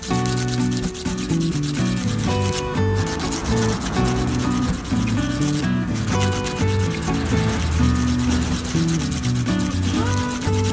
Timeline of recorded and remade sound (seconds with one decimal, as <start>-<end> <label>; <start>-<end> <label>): 0.0-3.4 recorded; 3.4-5.6 remade; 5.6-10.7 recorded